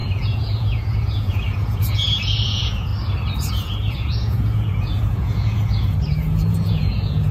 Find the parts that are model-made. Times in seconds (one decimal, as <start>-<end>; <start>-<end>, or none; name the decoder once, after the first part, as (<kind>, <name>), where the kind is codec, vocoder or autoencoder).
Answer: 0.0-2.9 (vocoder, Vocos); 3.5-7.3